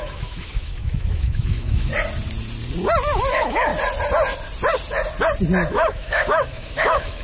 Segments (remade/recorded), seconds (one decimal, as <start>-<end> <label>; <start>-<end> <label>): 0.0-1.9 remade; 1.9-3.3 recorded; 3.3-3.7 remade; 3.7-5.7 recorded; 5.7-7.2 remade